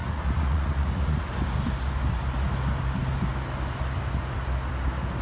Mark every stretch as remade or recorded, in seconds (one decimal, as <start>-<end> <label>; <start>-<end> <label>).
0.0-1.3 remade; 1.3-5.2 recorded